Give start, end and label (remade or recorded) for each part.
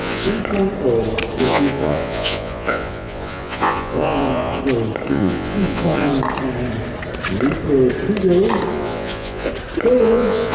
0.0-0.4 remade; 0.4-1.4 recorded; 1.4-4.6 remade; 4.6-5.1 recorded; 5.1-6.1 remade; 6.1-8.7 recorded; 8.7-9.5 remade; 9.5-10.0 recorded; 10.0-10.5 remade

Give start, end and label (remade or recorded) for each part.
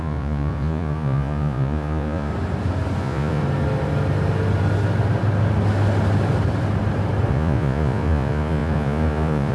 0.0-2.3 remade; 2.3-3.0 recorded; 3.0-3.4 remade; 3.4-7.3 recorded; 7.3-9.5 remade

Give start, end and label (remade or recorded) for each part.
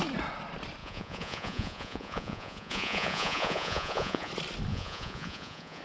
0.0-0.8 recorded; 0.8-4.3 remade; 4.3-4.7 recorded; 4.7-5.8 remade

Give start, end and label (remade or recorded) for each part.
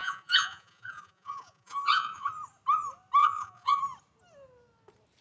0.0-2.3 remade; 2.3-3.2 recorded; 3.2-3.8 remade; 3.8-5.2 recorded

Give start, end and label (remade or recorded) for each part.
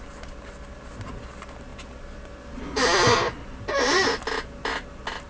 0.0-5.3 recorded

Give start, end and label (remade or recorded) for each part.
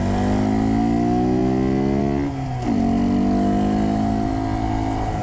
0.0-5.2 recorded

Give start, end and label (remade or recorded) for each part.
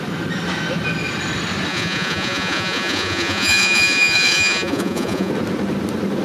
0.0-1.7 recorded; 1.7-5.3 remade; 5.3-6.2 recorded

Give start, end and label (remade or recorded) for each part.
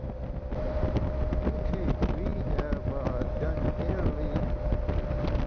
0.0-5.5 recorded